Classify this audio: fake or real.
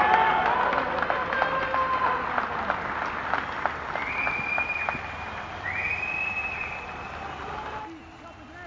real